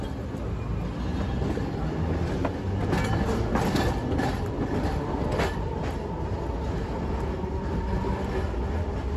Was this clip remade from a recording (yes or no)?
no